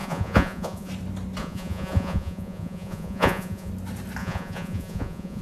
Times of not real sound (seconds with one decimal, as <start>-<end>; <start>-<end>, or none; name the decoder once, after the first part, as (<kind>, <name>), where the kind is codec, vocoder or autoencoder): 0.0-0.9 (vocoder, Vocos); 1.4-3.7; 4.2-5.4